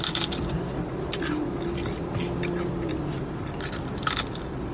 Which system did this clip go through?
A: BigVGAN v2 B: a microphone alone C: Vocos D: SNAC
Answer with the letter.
B